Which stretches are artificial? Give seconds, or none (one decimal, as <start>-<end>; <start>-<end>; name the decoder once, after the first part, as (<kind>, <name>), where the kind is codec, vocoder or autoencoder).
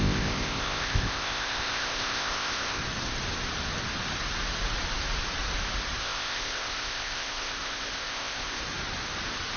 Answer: 0.0-2.8 (codec, ZipCodec); 6.0-8.6